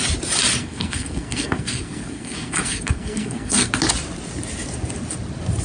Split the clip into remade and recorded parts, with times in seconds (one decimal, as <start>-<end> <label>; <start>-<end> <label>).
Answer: 0.0-0.6 recorded; 0.6-3.7 remade; 3.7-5.6 recorded